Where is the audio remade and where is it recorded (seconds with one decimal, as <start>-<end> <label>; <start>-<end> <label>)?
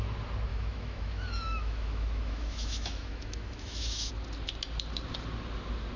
0.0-0.5 recorded; 0.5-4.1 remade; 4.1-6.0 recorded